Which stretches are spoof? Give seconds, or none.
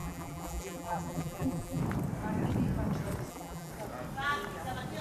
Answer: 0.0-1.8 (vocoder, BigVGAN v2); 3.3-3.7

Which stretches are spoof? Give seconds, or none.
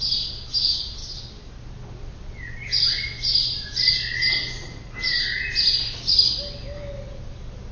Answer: 3.3-3.9 (vocoder, BigVGAN v2)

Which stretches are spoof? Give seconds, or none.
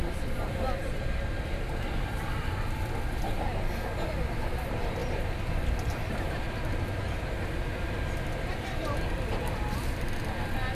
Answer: none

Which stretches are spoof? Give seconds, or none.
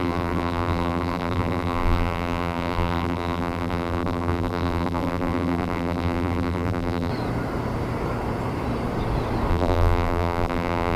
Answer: 0.0-7.1 (vocoder, BigVGAN v2); 9.5-11.0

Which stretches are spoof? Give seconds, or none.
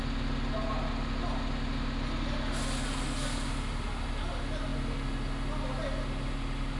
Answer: none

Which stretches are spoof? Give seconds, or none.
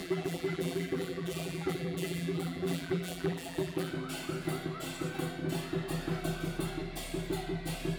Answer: 0.0-3.9 (vocoder, BigVGAN v2)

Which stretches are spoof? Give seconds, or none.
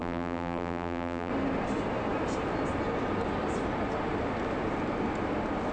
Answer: 0.0-1.3 (vocoder, BigVGAN v2)